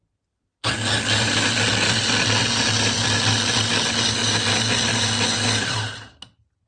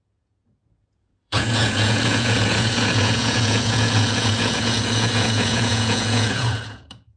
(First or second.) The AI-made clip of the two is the second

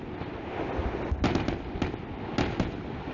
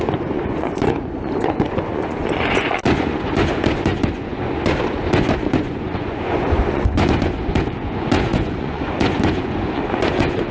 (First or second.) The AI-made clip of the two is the second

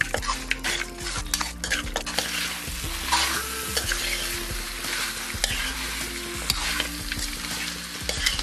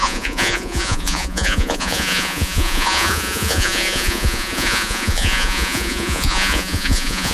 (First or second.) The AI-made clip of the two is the second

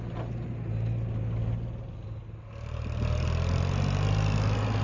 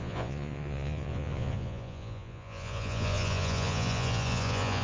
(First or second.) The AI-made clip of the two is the second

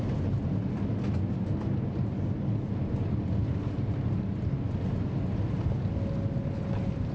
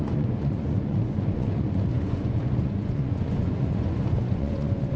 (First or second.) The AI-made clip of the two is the second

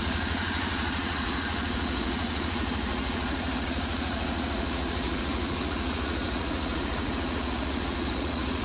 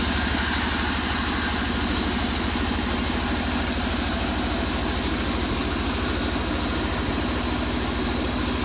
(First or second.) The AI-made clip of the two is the first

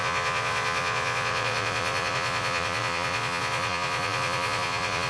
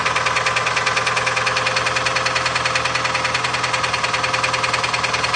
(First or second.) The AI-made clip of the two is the first